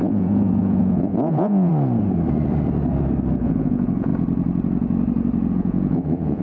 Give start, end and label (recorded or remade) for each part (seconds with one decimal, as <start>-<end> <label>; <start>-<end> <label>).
0.0-1.7 remade; 1.7-3.4 recorded; 3.4-4.1 remade; 4.1-5.5 recorded; 5.5-6.4 remade